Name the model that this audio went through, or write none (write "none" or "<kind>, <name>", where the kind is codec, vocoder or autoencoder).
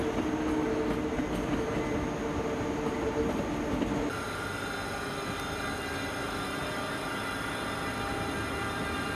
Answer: none